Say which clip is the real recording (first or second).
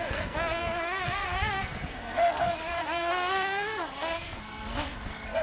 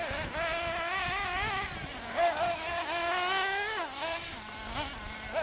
second